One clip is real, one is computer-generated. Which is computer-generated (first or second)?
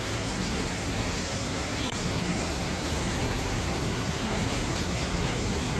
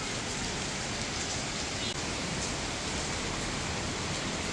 first